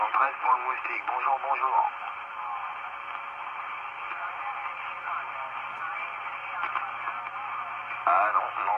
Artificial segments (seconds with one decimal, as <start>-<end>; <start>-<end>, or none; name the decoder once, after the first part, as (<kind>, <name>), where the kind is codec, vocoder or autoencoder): 5.9-6.6 (vocoder, BigVGAN v2)